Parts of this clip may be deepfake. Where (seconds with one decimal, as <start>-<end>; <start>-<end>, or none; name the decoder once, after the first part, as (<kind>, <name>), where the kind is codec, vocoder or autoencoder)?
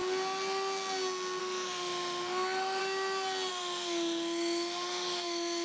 1.4-2.8 (autoencoder, DAC-VAE); 3.5-5.6